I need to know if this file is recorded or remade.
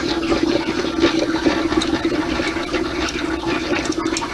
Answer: recorded